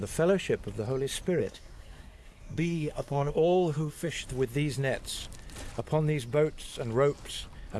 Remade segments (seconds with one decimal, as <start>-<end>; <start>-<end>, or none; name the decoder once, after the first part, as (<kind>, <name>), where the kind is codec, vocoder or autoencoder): 1.4-4.2 (codec, SNAC)